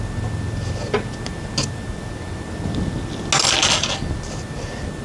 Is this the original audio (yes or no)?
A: yes